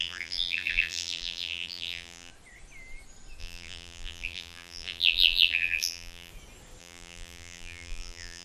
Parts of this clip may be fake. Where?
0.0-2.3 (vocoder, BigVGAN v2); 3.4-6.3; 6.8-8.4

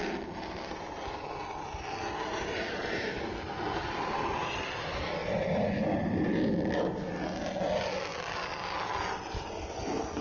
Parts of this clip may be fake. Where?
none

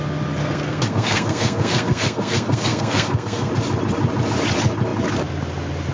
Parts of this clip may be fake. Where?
0.4-3.5 (codec, SNAC)

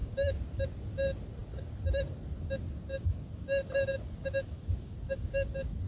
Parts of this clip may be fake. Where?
none

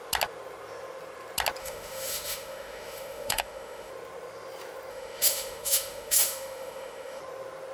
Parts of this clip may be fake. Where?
1.6-3.9 (autoencoder, DAC-VAE); 4.9-7.2

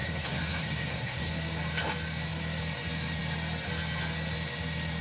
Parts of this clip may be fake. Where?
0.0-1.3 (codec, SNAC)